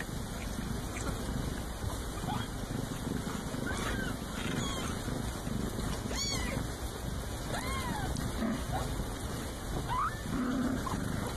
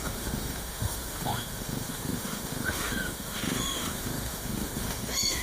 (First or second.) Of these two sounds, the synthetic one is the second